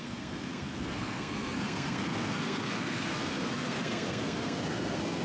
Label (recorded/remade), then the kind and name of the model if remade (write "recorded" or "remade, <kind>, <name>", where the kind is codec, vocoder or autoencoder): remade, codec, SNAC